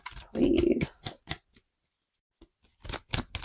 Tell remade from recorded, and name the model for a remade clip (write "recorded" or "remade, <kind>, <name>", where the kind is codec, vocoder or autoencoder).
recorded